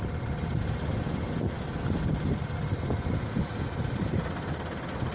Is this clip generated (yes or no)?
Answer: yes